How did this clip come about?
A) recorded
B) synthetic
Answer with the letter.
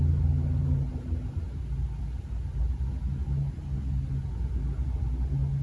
A